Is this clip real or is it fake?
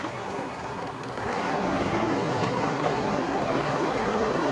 fake